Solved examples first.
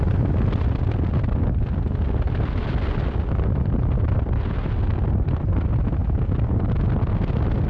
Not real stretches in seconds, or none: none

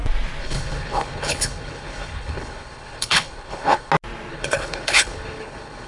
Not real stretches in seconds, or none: 0.4-3.9 (codec, HILCodec); 4.3-5.9

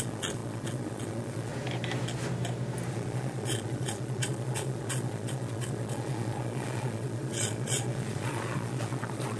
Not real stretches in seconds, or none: 0.0-1.5 (vocoder, Vocos); 2.9-9.4

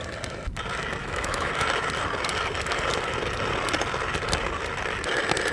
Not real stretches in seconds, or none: 1.0-1.5 (autoencoder, DAC-VAE)

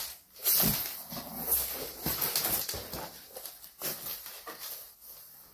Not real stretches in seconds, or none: 4.1-5.5 (vocoder, BigVGAN v2)

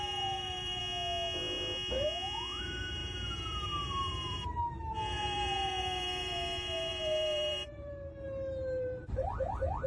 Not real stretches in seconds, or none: 0.0-0.8 (vocoder, BigVGAN v2); 2.6-9.9